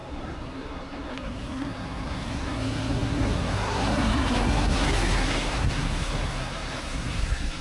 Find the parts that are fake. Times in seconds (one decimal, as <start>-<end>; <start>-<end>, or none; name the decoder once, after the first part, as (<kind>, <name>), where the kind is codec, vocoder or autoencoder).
0.0-7.6 (codec, SNAC)